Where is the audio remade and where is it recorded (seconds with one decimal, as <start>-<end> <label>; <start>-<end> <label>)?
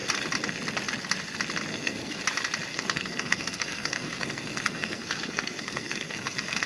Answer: 0.0-1.7 recorded; 1.7-2.2 remade; 2.2-2.7 recorded; 2.7-6.7 remade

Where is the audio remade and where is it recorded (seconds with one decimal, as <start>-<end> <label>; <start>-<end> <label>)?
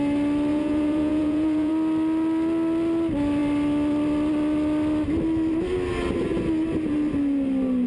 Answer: 0.0-0.5 recorded; 0.5-1.7 remade; 1.7-7.9 recorded